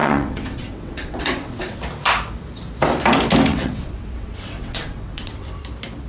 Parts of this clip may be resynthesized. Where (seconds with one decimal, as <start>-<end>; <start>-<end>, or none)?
0.0-1.8; 3.5-5.6